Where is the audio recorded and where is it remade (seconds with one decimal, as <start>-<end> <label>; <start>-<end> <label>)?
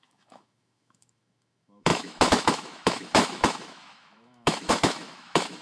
0.0-5.6 remade